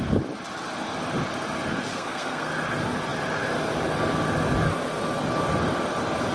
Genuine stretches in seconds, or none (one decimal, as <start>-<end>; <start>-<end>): 0.0-1.9; 2.5-6.3